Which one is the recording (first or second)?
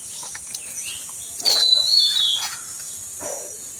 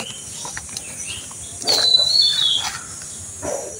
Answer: second